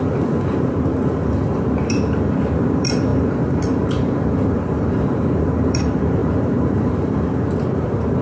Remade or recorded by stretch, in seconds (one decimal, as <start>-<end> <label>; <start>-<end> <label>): 0.0-1.2 remade; 1.2-1.8 recorded; 1.8-8.2 remade